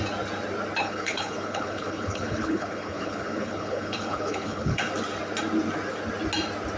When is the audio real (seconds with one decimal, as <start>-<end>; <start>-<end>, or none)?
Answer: 0.0-0.8; 4.9-6.8